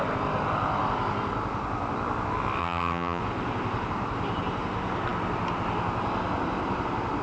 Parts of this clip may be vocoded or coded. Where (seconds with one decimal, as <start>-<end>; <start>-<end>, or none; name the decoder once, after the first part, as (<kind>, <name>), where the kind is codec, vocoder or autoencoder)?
2.6-3.2 (vocoder, HiFi-GAN)